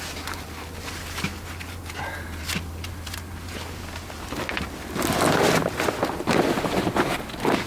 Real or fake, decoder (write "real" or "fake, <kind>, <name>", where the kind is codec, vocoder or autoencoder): real